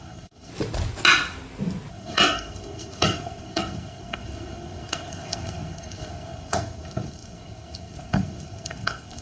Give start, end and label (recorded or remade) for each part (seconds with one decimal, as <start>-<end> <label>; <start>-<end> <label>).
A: 0.0-0.5 remade; 0.5-1.9 recorded; 1.9-9.2 remade